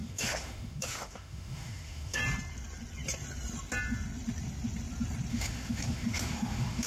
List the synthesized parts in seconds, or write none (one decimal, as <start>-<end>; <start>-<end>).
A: 0.0-2.2; 5.3-6.9